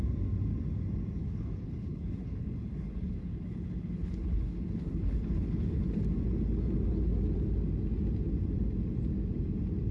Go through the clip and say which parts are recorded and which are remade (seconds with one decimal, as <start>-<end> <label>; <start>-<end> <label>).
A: 0.0-1.2 recorded; 1.2-6.0 remade; 6.0-9.9 recorded